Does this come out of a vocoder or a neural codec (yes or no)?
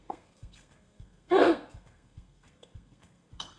yes